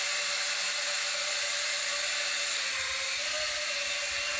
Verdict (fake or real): real